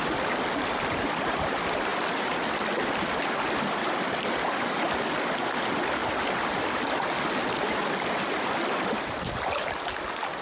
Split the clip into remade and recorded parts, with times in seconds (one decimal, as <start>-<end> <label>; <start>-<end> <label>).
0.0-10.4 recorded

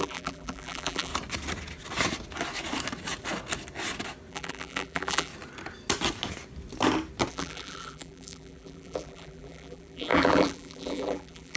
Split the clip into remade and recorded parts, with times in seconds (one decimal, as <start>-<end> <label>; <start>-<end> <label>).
0.0-1.1 remade; 1.1-4.3 recorded; 4.3-5.3 remade; 5.3-7.3 recorded; 7.3-11.6 remade

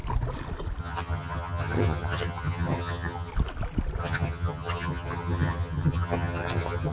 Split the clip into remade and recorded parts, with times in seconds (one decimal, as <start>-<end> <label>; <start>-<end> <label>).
0.0-0.8 recorded; 0.8-3.3 remade; 3.3-4.0 recorded; 4.0-6.9 remade